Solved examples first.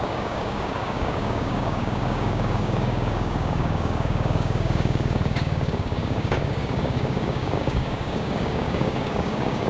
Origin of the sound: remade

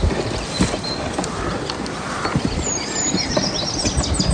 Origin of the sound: remade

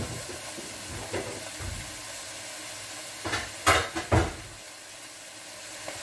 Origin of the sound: recorded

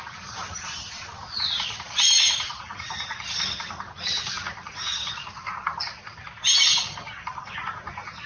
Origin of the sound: recorded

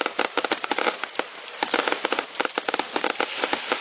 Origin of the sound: remade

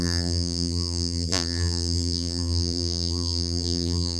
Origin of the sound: remade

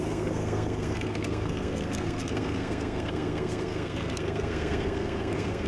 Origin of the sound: remade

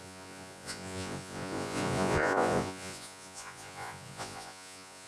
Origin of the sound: remade